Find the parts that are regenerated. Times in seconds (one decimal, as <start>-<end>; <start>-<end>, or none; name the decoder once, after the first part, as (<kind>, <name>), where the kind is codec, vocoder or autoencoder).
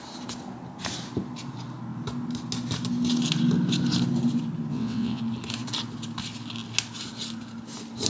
4.7-5.2 (vocoder, WaveNeXt)